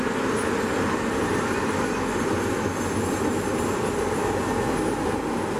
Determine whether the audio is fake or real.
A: real